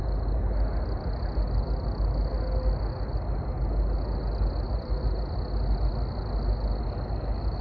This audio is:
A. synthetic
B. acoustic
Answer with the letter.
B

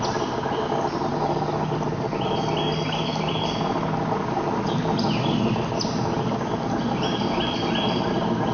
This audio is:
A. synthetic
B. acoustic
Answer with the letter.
B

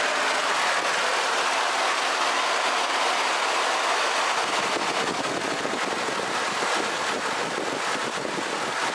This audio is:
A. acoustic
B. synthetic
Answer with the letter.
A